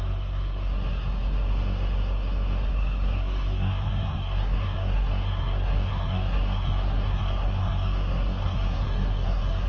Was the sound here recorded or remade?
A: remade